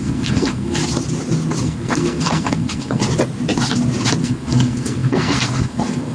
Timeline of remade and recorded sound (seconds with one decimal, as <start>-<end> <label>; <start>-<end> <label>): 0.0-0.8 remade; 0.8-1.6 recorded; 1.6-3.0 remade; 3.0-4.2 recorded; 4.2-6.1 remade